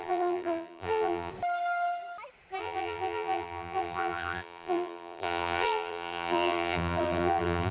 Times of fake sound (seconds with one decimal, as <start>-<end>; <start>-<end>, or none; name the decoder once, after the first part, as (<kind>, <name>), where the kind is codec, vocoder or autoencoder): 0.0-1.3 (vocoder, BigVGAN v2); 2.6-7.7